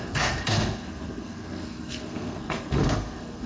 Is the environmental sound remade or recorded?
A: remade